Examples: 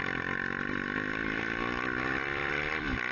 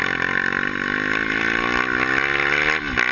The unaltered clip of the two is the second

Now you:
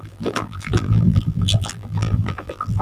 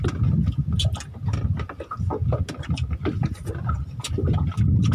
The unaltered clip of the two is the second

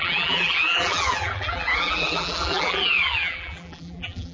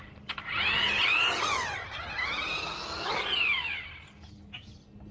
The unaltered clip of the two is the second